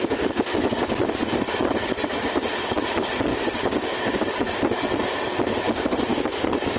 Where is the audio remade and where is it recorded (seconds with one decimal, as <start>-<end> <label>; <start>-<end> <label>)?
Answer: 0.0-3.3 recorded; 3.3-4.5 remade; 4.5-6.1 recorded; 6.1-6.8 remade